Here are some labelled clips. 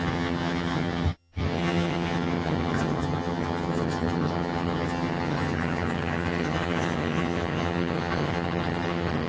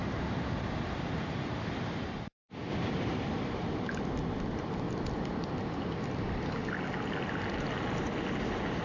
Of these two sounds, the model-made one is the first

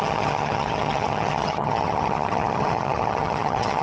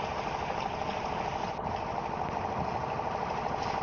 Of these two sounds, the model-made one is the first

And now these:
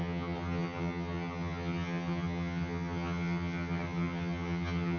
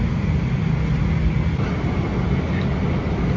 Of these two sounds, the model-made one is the first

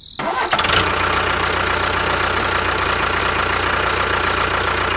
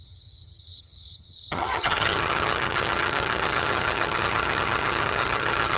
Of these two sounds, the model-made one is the second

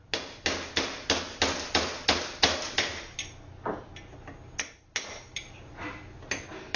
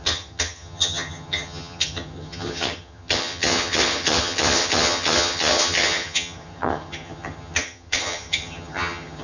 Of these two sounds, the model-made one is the second